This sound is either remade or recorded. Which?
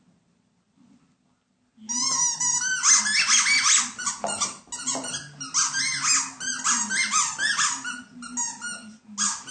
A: recorded